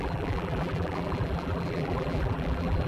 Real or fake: fake